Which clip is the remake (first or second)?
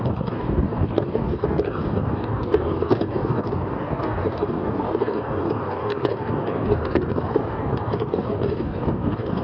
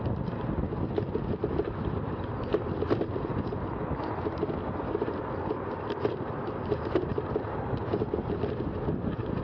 first